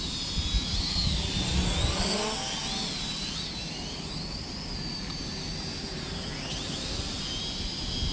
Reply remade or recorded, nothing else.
recorded